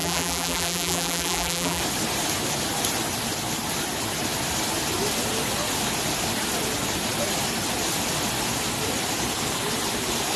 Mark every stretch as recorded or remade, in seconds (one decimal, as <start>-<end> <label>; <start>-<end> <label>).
0.0-1.8 remade; 1.8-10.4 recorded